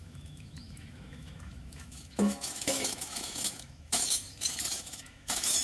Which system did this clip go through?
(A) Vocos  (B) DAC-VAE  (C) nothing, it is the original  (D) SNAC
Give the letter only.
B